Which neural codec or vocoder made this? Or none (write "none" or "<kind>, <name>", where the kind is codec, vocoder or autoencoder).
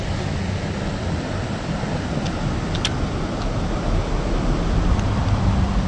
none